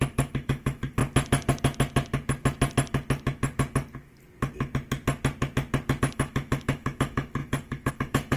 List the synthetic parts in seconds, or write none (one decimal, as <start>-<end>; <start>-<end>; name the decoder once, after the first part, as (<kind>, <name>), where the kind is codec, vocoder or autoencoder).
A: 0.0-1.0 (autoencoder, DAC-VAE); 6.0-8.4